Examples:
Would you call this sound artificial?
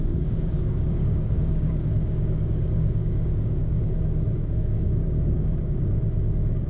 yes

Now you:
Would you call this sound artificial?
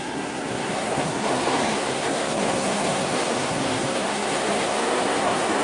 yes